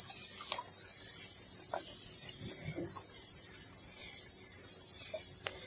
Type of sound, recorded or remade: recorded